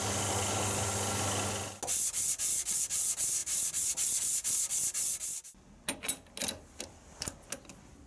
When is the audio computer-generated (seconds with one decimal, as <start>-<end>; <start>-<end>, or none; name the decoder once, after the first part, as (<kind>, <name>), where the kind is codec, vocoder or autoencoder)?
none

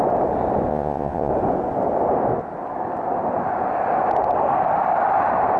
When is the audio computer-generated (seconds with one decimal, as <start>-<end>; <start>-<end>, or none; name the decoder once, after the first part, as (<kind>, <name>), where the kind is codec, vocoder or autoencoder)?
0.7-1.3 (vocoder, Vocos)

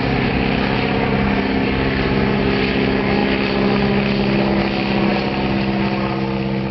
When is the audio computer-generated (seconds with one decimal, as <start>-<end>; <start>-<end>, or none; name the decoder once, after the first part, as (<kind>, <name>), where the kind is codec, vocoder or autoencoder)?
none

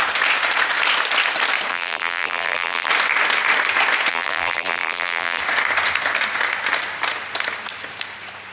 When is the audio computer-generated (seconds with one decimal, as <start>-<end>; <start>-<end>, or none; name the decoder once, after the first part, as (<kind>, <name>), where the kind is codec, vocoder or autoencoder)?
1.7-2.9 (vocoder, BigVGAN v2); 4.1-5.4

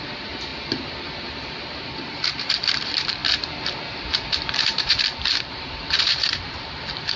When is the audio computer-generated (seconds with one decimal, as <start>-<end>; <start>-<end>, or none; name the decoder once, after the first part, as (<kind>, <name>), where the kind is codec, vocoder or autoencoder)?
0.0-7.2 (vocoder, BigVGAN v2)

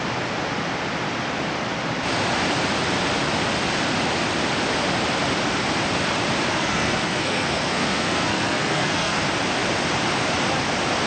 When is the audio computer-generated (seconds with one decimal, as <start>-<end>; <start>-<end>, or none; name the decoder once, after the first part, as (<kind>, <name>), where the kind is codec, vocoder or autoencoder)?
6.5-9.2 (codec, SNAC)

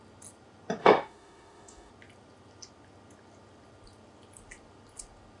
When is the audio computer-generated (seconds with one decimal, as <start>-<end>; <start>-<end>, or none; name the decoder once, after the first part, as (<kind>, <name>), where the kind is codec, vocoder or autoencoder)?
0.8-1.9 (autoencoder, DAC-VAE)